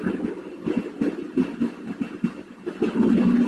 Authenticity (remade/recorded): recorded